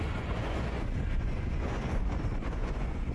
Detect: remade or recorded remade